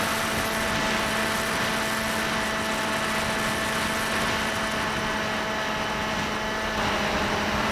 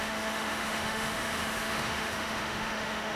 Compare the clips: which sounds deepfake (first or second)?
second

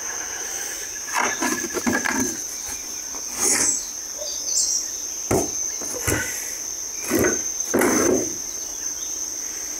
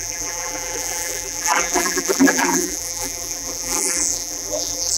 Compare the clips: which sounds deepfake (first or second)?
second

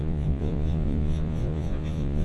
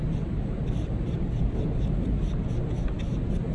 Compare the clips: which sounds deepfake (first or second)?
first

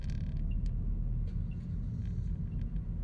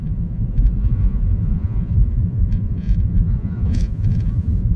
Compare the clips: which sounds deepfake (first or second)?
second